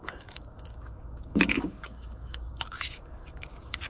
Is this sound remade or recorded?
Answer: remade